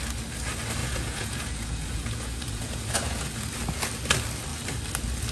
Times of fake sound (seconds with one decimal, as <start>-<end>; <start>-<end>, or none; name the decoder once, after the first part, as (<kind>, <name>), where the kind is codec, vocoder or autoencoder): 0.8-3.4 (vocoder, Vocos)